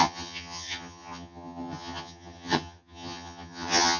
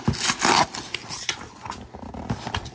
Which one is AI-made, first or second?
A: first